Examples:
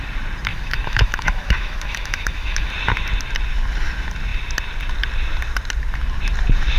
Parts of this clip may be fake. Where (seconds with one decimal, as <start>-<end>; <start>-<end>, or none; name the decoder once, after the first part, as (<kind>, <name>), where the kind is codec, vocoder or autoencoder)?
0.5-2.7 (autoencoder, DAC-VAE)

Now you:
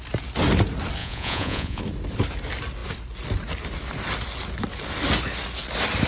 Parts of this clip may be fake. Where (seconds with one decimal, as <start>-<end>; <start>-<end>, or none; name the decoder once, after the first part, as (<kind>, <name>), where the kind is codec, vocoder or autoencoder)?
1.0-1.8 (vocoder, Vocos)

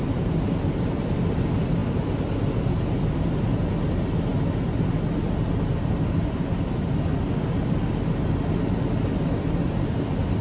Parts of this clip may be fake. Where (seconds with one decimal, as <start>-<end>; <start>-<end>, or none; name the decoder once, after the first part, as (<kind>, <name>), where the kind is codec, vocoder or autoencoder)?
none